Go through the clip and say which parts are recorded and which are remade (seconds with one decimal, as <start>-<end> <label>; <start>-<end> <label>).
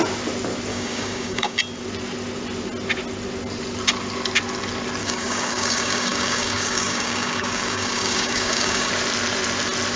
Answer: 0.0-0.7 recorded; 0.7-1.6 remade; 1.6-5.0 recorded; 5.0-8.9 remade; 8.9-10.0 recorded